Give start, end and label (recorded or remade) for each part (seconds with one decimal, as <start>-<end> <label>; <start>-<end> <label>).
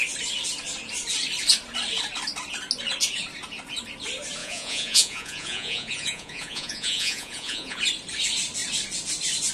0.0-4.4 recorded; 4.4-7.8 remade; 7.8-9.5 recorded